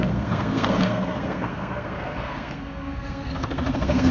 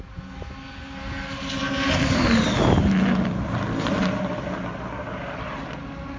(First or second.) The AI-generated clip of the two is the first